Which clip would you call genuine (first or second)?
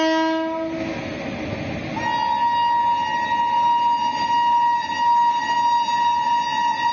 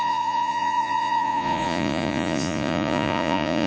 first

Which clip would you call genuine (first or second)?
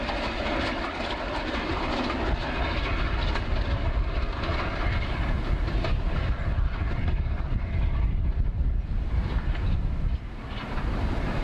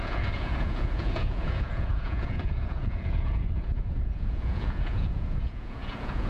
first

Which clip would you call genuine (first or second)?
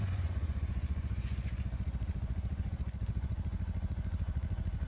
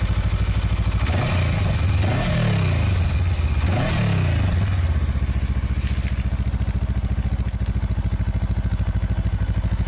second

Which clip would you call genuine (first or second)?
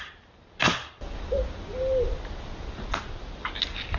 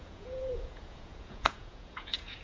first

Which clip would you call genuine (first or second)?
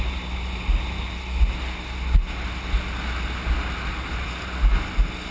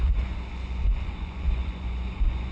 first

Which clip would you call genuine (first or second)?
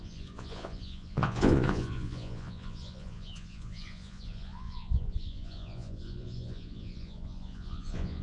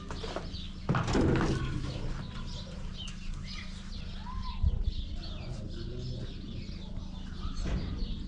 second